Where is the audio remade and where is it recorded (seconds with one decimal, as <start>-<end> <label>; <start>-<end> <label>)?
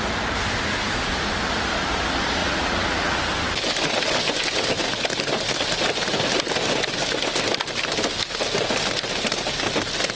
0.0-2.4 recorded; 2.4-3.2 remade; 3.2-10.1 recorded